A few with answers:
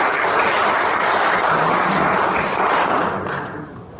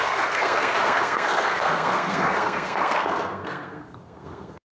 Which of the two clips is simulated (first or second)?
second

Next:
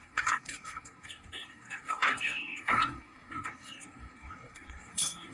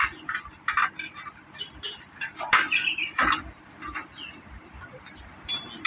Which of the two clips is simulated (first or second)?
first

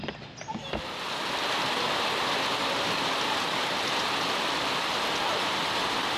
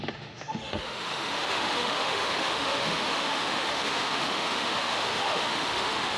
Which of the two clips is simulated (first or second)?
second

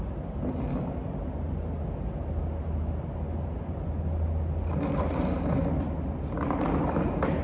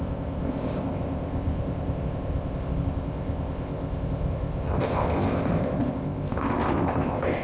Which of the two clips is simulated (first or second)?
second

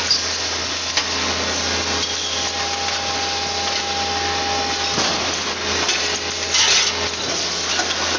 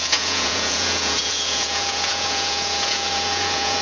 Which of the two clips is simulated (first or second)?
second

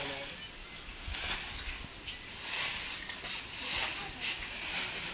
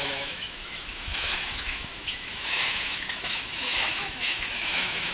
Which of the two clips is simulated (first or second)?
second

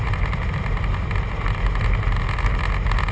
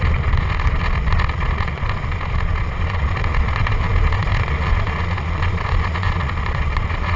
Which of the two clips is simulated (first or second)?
second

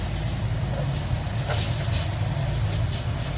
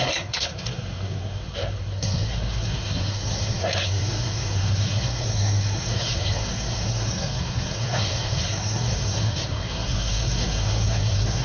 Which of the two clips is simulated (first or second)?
second